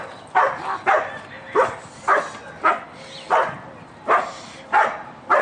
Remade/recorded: recorded